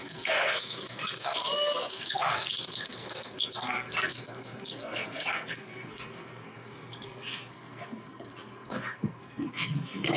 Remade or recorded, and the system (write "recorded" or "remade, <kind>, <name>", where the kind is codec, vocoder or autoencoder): remade, codec, SNAC